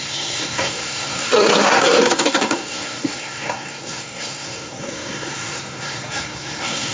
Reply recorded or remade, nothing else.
remade